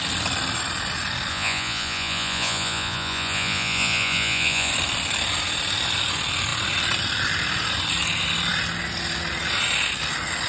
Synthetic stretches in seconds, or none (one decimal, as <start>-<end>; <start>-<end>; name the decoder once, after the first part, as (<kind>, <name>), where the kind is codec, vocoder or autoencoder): 1.3-4.7 (vocoder, Vocos)